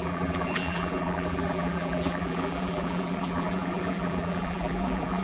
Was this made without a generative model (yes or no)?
no